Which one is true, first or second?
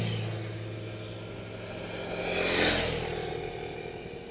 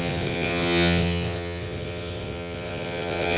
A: first